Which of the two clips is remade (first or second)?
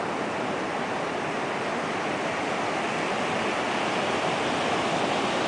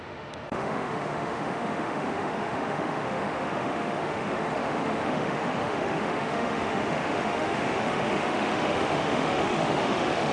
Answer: second